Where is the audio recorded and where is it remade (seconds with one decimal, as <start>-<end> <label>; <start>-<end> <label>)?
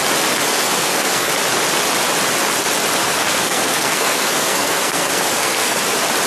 0.0-0.5 recorded; 0.5-1.3 remade; 1.3-3.0 recorded; 3.0-5.8 remade; 5.8-6.3 recorded